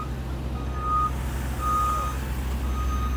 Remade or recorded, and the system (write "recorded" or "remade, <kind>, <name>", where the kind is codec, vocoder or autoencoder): recorded